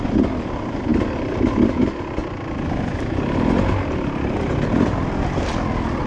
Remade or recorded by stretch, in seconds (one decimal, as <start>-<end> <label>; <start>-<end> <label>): 0.0-0.9 recorded; 0.9-1.8 remade; 1.8-2.2 recorded; 2.2-5.4 remade; 5.4-6.1 recorded